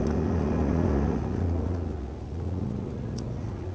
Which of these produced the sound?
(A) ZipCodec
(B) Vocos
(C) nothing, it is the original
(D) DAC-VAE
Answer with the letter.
B